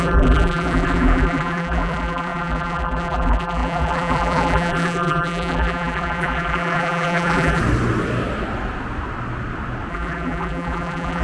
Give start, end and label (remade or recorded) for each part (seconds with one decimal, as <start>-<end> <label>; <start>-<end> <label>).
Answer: 0.0-7.6 remade; 7.6-9.9 recorded; 9.9-11.2 remade